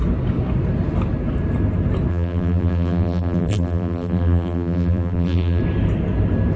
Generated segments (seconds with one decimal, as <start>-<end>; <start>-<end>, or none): 2.1-5.6